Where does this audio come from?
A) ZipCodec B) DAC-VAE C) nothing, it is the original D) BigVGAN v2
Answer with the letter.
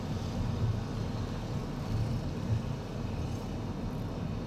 C